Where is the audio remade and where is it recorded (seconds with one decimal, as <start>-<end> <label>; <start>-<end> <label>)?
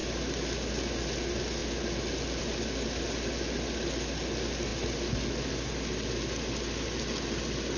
0.0-7.8 recorded